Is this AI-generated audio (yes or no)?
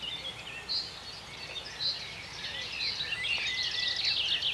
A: no